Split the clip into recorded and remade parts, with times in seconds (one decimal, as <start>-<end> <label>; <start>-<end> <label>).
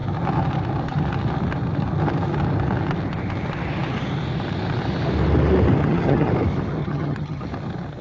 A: 0.0-5.8 recorded; 5.8-6.3 remade; 6.3-6.8 recorded; 6.8-7.4 remade; 7.4-8.0 recorded